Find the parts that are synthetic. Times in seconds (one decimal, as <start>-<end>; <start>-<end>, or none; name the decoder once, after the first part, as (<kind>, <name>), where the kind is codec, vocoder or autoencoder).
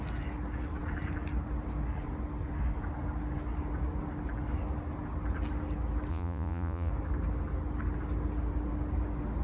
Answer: 6.1-6.9 (vocoder, Vocos)